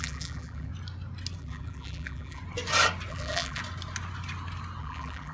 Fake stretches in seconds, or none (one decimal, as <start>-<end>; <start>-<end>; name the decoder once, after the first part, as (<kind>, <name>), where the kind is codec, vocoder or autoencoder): 0.0-0.7 (vocoder, BigVGAN v2); 1.4-2.4; 3.1-3.6; 4.8-5.3